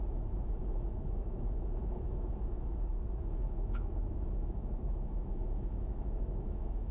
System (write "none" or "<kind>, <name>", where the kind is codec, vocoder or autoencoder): autoencoder, DAC-VAE